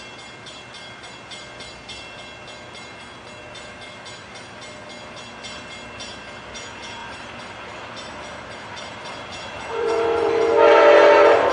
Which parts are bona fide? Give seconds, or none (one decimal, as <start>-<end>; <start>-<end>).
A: 0.0-7.0; 10.4-11.5